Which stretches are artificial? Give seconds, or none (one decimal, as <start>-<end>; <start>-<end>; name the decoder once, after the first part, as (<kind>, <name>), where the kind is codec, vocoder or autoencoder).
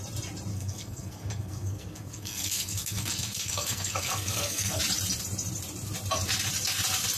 0.5-4.8 (codec, SNAC)